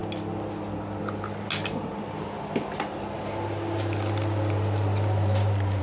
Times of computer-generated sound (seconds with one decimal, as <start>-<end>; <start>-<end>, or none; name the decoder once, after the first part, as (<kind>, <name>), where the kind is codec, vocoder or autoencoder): none